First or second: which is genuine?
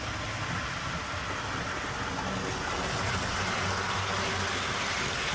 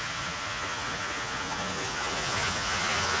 first